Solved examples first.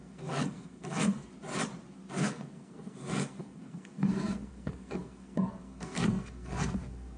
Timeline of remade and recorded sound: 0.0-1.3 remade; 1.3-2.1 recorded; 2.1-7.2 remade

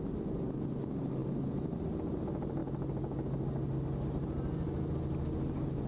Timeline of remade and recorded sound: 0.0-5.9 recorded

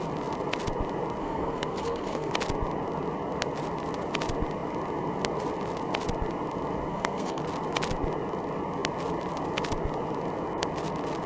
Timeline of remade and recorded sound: 0.0-1.2 recorded; 1.2-2.3 remade; 2.3-6.9 recorded; 6.9-7.4 remade; 7.4-11.3 recorded